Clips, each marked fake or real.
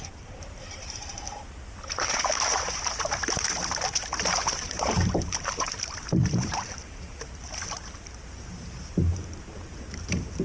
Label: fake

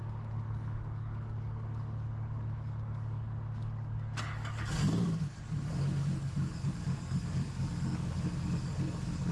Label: fake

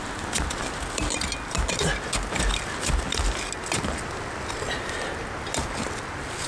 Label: real